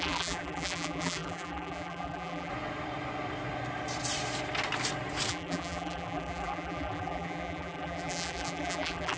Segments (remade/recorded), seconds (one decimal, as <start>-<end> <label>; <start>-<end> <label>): 0.0-2.5 remade; 2.5-5.3 recorded; 5.3-9.2 remade